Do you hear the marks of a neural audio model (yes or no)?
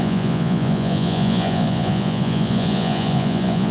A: yes